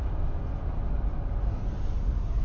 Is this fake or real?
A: real